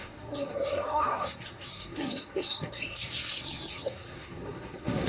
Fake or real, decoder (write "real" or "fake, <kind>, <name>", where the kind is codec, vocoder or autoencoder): fake, codec, SNAC